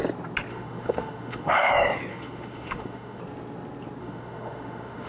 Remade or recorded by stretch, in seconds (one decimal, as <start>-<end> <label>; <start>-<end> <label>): 0.0-0.5 recorded; 0.5-1.7 remade; 1.7-2.1 recorded; 2.1-3.2 remade; 3.2-4.0 recorded; 4.0-5.1 remade